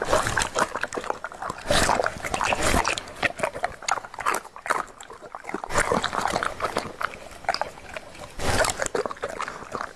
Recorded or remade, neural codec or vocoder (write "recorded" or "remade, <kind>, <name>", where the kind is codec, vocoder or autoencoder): recorded